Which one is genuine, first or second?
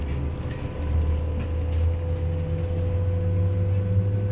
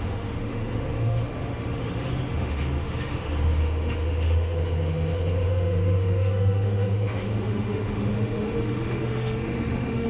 first